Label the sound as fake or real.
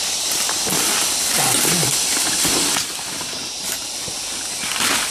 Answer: real